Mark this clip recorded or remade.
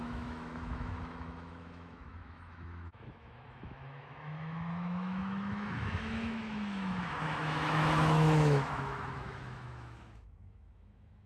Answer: remade